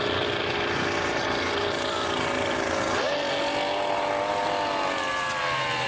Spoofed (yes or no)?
no